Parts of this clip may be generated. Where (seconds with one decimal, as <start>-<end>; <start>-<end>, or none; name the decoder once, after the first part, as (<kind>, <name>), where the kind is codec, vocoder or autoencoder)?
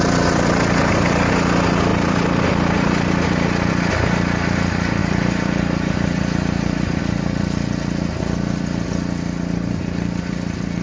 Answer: 0.8-1.3 (vocoder, BigVGAN v2); 1.9-3.7; 5.0-7.0